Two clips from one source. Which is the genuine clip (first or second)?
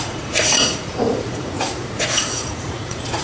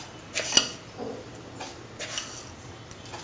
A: second